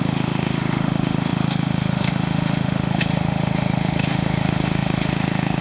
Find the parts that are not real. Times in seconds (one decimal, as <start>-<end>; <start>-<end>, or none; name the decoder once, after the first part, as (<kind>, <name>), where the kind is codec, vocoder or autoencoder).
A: 0.0-5.6 (autoencoder, DAC-VAE)